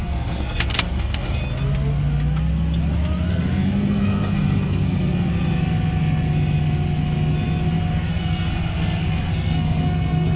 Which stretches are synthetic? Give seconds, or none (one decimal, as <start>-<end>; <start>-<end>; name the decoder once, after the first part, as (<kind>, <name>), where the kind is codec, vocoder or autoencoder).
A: 0.0-1.4 (codec, SNAC); 3.3-5.3; 8.1-10.4